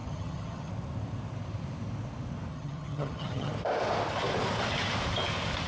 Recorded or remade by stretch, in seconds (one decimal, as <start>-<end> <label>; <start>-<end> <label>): 0.0-0.7 remade; 0.7-2.5 recorded; 2.5-3.5 remade; 3.5-5.7 recorded